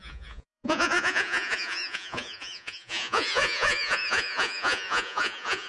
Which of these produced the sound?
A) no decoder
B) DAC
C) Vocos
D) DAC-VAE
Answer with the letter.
C